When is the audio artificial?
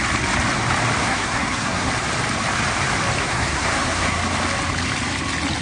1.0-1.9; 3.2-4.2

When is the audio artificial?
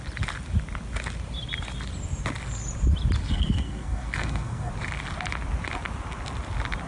3.2-4.7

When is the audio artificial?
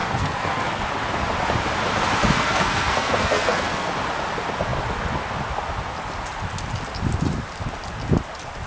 0.0-0.9; 2.2-3.9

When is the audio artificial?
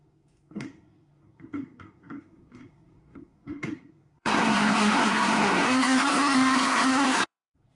0.0-7.7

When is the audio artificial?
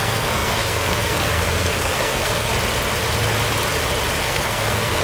0.0-2.5; 4.2-5.0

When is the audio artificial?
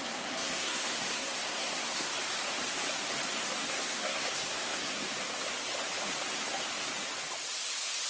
0.0-2.1; 3.7-5.0